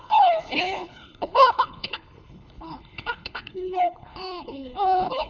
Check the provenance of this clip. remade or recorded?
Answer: remade